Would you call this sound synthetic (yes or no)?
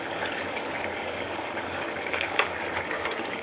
yes